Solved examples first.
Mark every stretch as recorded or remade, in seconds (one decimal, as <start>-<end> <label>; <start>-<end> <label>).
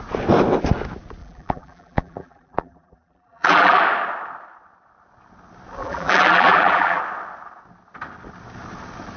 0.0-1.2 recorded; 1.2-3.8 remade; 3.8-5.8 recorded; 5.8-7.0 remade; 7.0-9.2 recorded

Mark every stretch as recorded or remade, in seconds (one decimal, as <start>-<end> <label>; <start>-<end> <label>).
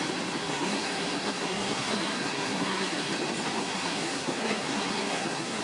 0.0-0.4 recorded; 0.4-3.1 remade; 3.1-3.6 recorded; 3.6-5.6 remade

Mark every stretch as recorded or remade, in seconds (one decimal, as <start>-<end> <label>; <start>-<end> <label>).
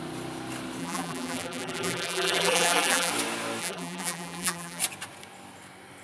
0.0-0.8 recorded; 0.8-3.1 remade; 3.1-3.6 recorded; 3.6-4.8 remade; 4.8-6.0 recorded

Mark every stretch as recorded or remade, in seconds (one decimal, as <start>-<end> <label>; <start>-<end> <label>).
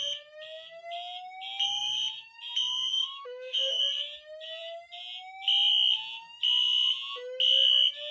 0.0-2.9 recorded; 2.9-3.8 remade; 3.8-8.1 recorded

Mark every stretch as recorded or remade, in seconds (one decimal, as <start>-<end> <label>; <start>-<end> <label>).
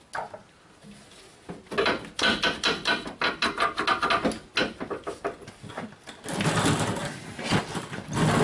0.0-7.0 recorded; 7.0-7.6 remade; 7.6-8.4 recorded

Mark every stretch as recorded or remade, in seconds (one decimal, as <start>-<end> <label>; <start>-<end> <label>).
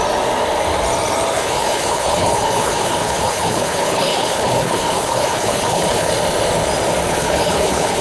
0.0-1.3 recorded; 1.3-6.1 remade; 6.1-7.1 recorded; 7.1-8.0 remade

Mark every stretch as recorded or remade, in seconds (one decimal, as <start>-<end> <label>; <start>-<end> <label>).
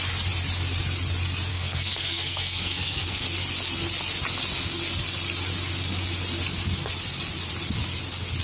0.0-1.5 recorded; 1.5-3.2 remade; 3.2-8.4 recorded